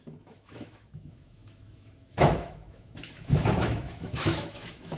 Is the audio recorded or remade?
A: remade